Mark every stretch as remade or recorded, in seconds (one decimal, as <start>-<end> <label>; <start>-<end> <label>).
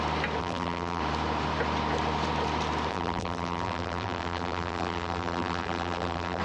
0.0-0.4 recorded; 0.4-1.0 remade; 1.0-2.9 recorded; 2.9-6.4 remade